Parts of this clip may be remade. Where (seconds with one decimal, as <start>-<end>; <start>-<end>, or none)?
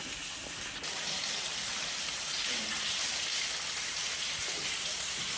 none